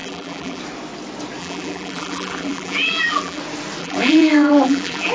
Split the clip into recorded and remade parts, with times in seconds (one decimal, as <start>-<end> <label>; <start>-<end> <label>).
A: 0.0-0.6 remade; 0.6-1.4 recorded; 1.4-3.4 remade; 3.4-3.8 recorded; 3.8-5.1 remade